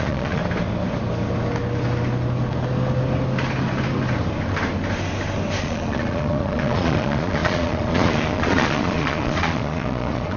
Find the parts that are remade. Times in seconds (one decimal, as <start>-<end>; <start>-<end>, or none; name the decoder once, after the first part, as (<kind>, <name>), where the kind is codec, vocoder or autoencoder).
0.0-0.4 (vocoder, Vocos); 5.6-10.4